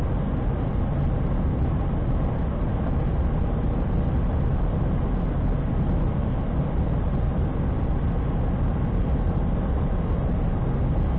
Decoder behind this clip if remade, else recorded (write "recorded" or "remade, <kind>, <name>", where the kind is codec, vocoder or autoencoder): recorded